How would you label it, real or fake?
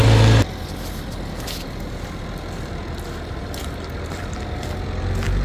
fake